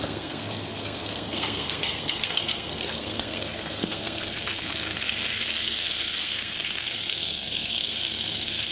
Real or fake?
fake